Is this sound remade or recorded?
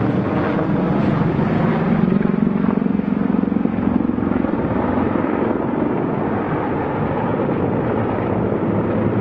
recorded